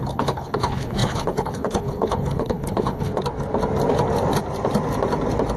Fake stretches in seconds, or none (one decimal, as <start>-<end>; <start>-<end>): 0.0-3.1